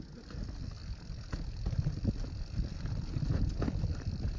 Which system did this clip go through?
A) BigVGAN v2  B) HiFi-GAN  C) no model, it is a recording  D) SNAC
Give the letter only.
C